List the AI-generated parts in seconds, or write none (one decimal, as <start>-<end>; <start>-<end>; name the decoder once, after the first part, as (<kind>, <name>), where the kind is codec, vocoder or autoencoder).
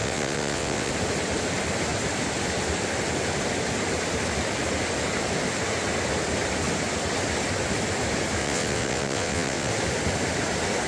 0.0-0.9 (vocoder, WaveNeXt); 8.4-9.7